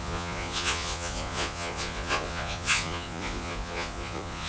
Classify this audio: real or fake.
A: fake